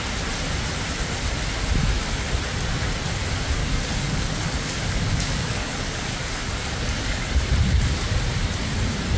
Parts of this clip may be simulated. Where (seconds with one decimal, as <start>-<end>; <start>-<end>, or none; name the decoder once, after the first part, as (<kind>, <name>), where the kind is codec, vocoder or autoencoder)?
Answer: 3.6-7.3 (codec, DAC)

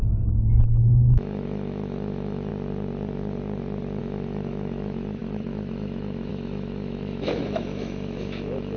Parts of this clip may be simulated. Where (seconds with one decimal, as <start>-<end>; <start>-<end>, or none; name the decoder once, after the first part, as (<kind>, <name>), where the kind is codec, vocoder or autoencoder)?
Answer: 0.0-2.5 (autoencoder, DAC-VAE); 4.0-8.8

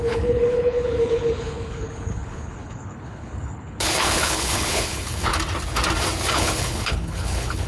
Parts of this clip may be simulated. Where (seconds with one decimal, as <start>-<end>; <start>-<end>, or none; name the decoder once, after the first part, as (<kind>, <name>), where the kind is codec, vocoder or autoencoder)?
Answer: 0.0-5.3 (codec, HILCodec); 6.3-7.7

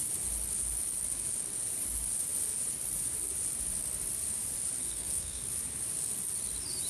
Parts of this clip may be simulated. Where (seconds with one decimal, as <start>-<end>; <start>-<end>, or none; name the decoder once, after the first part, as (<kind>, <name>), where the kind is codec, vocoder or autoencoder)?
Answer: 4.8-5.4 (codec, SNAC)

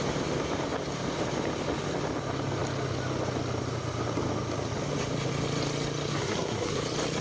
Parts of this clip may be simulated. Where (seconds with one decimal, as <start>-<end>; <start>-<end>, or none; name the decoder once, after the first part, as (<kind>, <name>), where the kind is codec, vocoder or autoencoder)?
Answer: 6.1-6.8 (codec, SNAC)

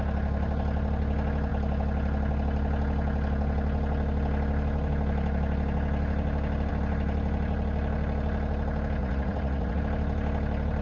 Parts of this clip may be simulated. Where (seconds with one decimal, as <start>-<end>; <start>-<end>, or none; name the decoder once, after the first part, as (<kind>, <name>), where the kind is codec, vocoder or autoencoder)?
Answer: 9.0-9.8 (vocoder, Vocos)

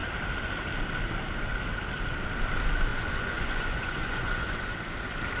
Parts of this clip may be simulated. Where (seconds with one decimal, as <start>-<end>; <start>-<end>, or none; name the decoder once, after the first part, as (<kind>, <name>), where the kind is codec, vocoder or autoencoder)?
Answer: 2.9-4.6 (vocoder, Vocos)